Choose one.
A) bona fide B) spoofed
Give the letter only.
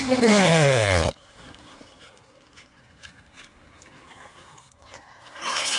B